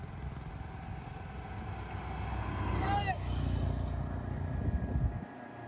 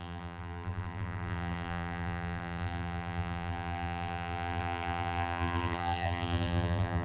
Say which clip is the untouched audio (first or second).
first